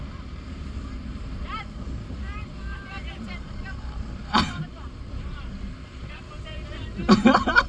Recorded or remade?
remade